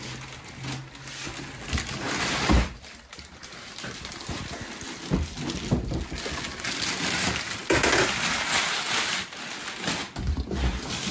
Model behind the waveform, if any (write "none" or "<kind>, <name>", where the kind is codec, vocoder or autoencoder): none